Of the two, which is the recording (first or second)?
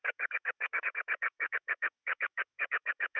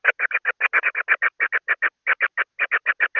second